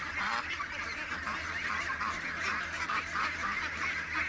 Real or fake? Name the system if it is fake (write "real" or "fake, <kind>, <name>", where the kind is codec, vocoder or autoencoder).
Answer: real